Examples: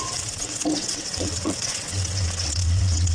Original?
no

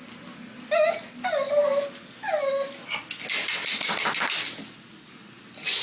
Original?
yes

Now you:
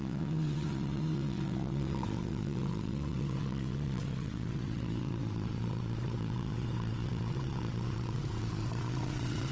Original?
no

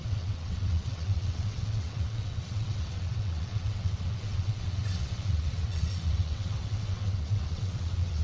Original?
no